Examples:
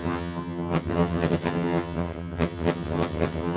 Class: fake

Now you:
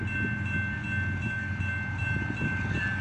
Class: real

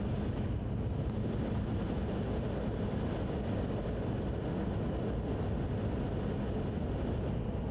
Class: real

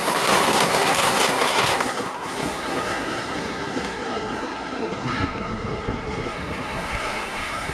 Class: fake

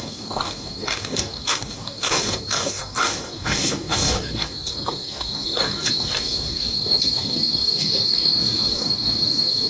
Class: fake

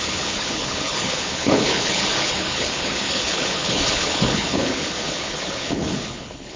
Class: fake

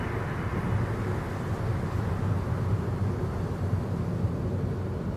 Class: real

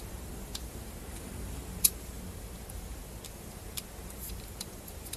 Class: fake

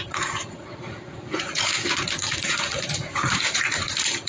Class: fake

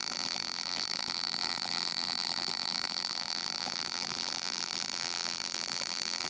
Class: fake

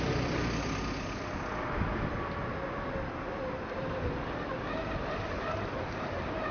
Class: real